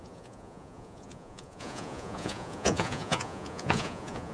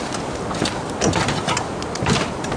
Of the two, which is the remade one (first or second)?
first